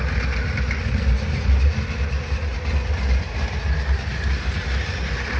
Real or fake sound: real